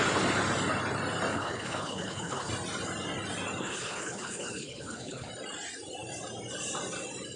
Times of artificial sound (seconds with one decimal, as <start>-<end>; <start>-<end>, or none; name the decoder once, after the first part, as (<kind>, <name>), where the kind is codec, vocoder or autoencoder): 1.3-2.5 (codec, HILCodec); 3.6-5.3